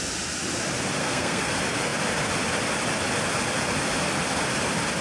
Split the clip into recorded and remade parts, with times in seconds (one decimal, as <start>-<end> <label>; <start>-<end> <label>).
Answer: 0.0-1.0 recorded; 1.0-1.5 remade; 1.5-5.0 recorded